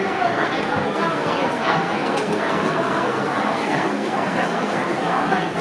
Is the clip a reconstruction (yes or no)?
yes